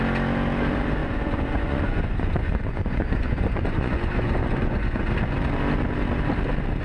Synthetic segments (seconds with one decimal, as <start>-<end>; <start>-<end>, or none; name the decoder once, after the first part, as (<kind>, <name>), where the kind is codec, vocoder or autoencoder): 1.0-5.1 (vocoder, Vocos)